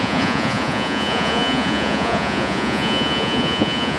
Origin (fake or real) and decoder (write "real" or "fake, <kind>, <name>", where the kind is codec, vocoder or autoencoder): fake, vocoder, Vocos